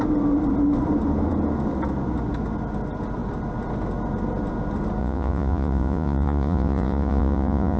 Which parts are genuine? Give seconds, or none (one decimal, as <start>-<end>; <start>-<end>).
0.0-5.0